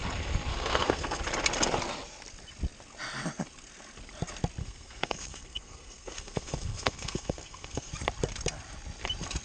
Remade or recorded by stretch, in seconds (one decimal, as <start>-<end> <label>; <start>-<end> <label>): 0.0-0.5 recorded; 0.5-1.2 remade; 1.2-4.6 recorded; 4.6-7.9 remade; 7.9-9.4 recorded